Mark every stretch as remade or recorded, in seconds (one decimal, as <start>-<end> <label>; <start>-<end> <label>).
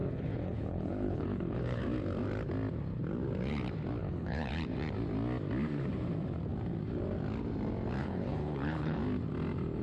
0.0-1.8 remade; 1.8-4.0 recorded; 4.0-4.5 remade; 4.5-8.0 recorded; 8.0-9.0 remade; 9.0-9.8 recorded